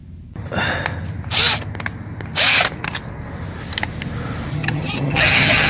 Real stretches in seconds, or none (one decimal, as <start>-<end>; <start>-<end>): 0.0-4.5